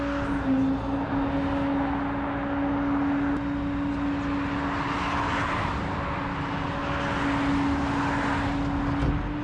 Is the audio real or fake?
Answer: real